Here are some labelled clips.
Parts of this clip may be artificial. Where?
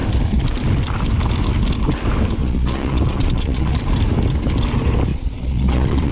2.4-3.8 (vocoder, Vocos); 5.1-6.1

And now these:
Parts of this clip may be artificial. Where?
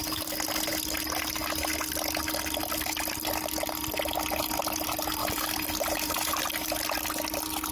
5.2-6.1 (vocoder, BigVGAN v2)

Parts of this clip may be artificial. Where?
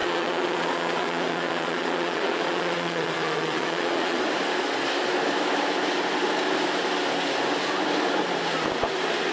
0.0-4.2 (vocoder, Vocos)